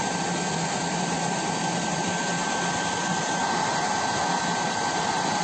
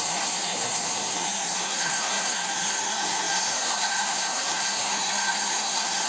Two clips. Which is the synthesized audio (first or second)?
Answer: second